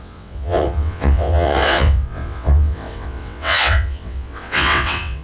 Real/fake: fake